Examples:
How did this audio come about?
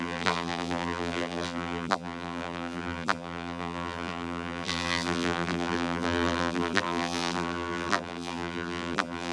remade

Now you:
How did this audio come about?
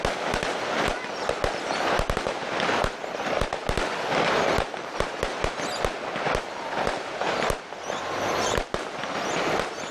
recorded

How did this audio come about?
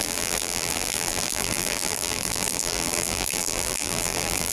remade